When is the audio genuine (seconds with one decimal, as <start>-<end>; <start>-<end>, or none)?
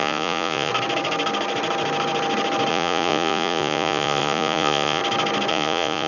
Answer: 0.7-2.7; 5.0-5.5